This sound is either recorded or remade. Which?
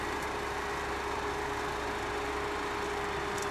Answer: recorded